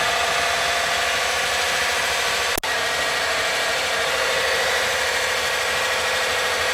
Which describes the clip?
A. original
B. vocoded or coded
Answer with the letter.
A